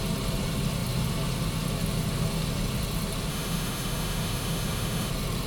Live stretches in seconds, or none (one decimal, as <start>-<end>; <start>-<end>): 0.0-3.3; 5.1-5.5